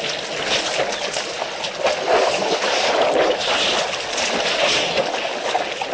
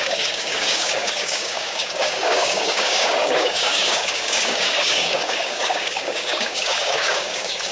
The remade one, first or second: second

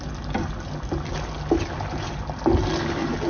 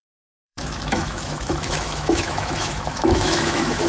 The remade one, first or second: second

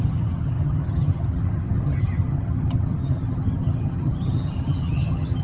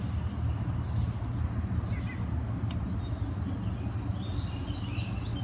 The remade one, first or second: first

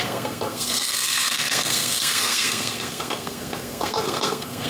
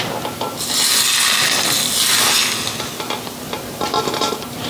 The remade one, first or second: first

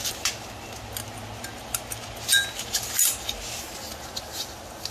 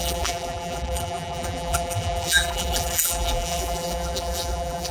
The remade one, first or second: second